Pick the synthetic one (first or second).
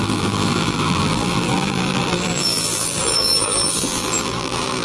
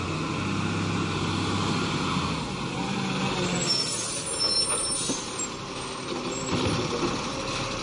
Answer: first